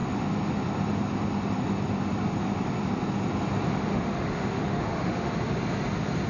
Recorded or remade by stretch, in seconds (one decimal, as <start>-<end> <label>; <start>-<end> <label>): 0.0-3.9 recorded; 3.9-5.3 remade; 5.3-6.3 recorded